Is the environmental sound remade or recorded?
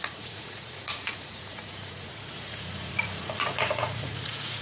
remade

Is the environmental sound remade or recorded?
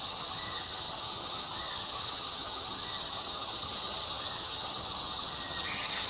remade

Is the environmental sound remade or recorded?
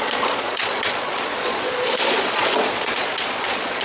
remade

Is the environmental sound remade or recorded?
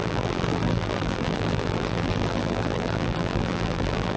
remade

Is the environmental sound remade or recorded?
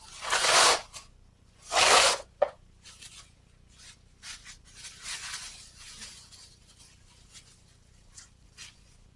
remade